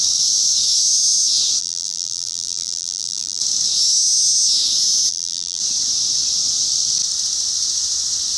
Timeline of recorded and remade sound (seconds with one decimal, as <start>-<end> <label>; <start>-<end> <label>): 0.0-1.6 recorded; 1.6-3.4 remade; 3.4-5.1 recorded; 5.1-5.6 remade; 5.6-8.4 recorded